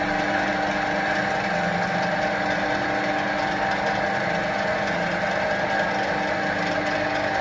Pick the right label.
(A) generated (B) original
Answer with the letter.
B